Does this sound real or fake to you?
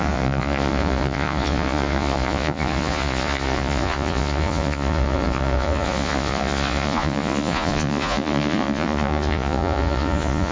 fake